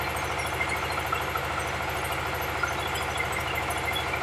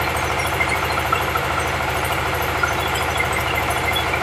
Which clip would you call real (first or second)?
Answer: first